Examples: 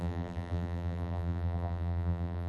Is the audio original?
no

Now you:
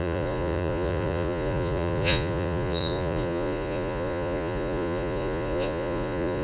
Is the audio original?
no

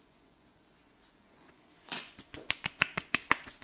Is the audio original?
no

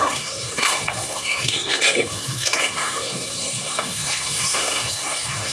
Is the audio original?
no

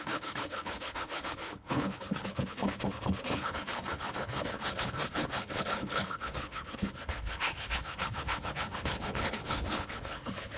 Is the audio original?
no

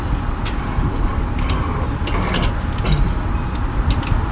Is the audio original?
yes